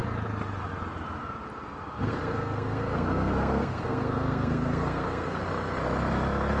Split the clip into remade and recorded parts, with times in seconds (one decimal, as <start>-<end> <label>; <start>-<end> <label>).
0.0-1.8 recorded; 1.8-5.4 remade; 5.4-6.6 recorded